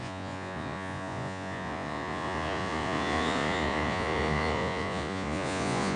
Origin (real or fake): fake